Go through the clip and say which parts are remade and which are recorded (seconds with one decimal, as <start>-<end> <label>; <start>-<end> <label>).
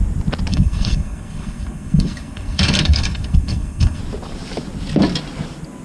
0.0-0.5 recorded; 0.5-4.0 remade; 4.0-5.8 recorded